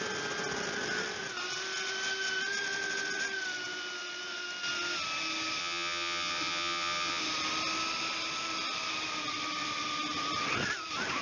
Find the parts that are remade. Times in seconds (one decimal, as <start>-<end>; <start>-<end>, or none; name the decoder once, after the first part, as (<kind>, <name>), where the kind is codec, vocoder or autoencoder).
5.6-7.2 (vocoder, WaveNeXt)